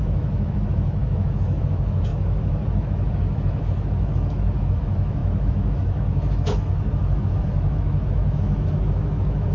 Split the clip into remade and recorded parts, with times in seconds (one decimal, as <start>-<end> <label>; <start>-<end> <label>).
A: 0.0-9.5 remade